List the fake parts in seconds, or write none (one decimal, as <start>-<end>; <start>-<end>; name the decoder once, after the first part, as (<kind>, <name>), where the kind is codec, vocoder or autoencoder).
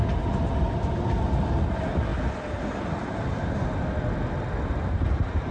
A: none